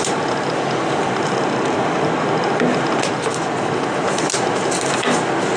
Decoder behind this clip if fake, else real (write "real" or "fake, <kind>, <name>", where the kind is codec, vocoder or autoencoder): real